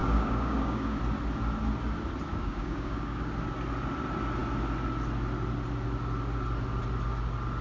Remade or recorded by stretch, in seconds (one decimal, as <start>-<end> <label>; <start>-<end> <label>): 0.0-1.0 remade; 1.0-2.3 recorded; 2.3-3.3 remade; 3.3-7.6 recorded